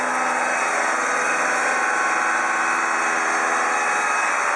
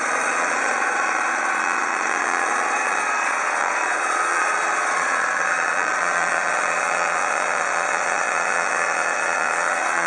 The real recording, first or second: first